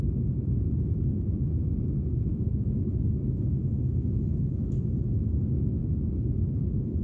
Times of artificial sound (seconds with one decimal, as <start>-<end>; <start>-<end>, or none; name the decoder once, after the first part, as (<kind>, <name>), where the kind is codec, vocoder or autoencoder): 0.0-5.8 (autoencoder, DAC-VAE)